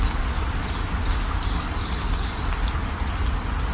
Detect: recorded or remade recorded